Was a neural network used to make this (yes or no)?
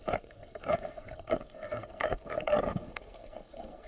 yes